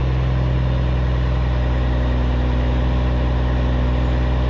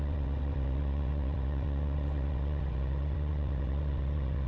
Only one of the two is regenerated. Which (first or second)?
second